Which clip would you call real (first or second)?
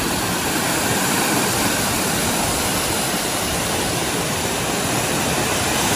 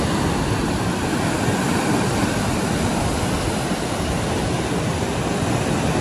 second